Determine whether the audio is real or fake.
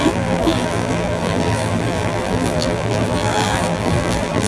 fake